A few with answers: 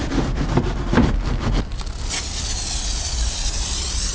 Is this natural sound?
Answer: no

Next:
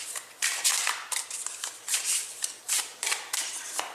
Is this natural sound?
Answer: no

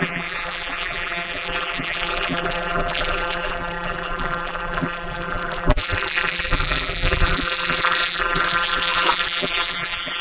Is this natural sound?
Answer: no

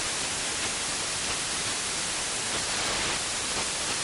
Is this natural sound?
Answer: yes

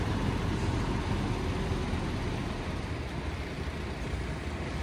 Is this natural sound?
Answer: no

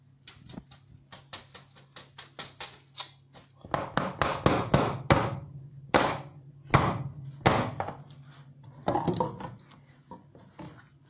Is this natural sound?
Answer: yes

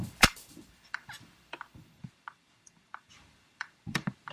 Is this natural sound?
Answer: no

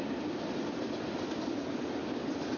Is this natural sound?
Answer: no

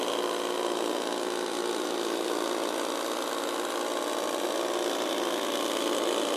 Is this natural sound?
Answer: yes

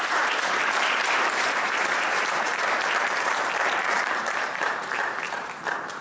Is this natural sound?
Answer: no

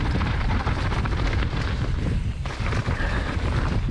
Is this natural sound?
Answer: no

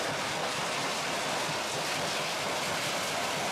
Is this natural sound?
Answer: yes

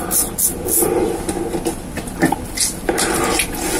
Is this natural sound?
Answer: yes